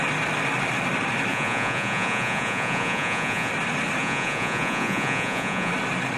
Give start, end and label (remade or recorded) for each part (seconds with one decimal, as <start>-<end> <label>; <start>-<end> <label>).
0.0-1.3 recorded; 1.3-3.5 remade; 3.5-4.0 recorded; 4.0-5.7 remade; 5.7-6.2 recorded

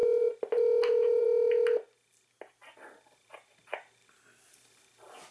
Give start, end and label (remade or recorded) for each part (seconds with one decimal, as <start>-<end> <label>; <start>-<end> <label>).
0.0-5.3 recorded

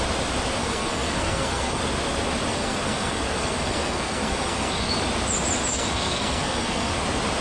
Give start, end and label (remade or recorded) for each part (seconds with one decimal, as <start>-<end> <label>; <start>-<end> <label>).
0.0-0.6 recorded; 0.6-1.8 remade; 1.8-2.5 recorded; 2.5-4.9 remade; 4.9-5.7 recorded; 5.7-6.9 remade; 6.9-7.4 recorded

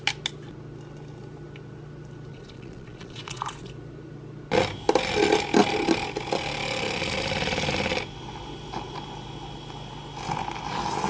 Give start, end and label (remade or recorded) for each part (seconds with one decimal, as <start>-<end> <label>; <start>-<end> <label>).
0.0-2.3 recorded; 2.3-3.7 remade; 3.7-11.1 recorded

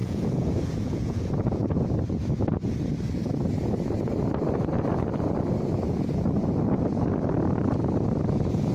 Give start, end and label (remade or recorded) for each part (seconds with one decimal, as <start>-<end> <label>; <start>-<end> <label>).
0.0-1.8 remade; 1.8-8.7 recorded

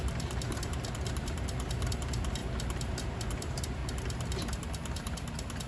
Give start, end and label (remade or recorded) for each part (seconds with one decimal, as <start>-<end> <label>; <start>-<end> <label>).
0.0-2.4 remade; 2.4-3.0 recorded; 3.0-3.8 remade; 3.8-5.7 recorded

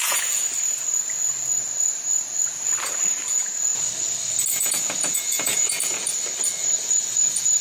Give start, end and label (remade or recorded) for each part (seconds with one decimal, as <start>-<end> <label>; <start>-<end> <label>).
0.0-0.4 remade; 0.4-3.3 recorded; 3.3-3.7 remade; 3.7-4.5 recorded; 4.5-6.1 remade; 6.1-6.8 recorded; 6.8-7.6 remade

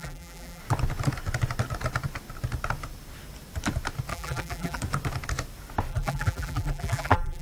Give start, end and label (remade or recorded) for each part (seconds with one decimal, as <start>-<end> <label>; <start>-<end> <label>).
0.0-0.6 remade; 0.6-4.1 recorded; 4.1-4.8 remade; 4.8-5.9 recorded; 5.9-7.4 remade